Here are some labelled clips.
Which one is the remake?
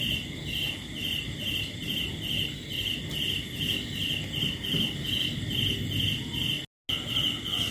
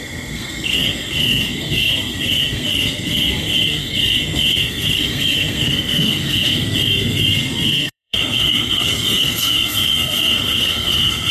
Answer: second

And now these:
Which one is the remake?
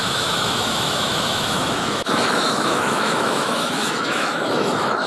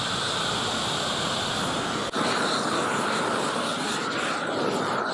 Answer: first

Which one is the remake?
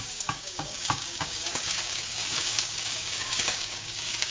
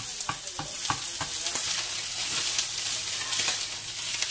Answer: first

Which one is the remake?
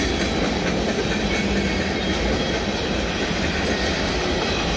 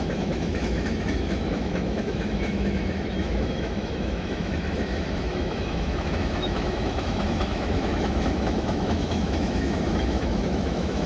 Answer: second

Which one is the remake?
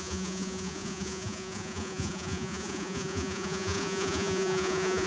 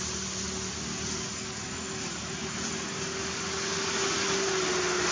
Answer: first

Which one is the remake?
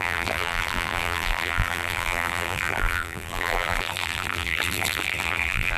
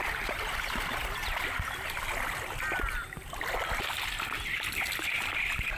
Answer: first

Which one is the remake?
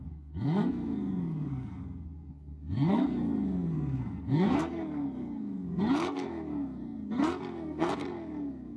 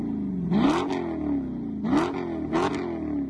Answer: first